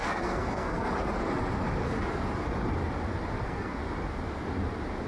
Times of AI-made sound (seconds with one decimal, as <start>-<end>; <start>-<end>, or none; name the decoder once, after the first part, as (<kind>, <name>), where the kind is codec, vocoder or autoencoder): 0.0-0.9 (codec, SNAC); 3.4-3.8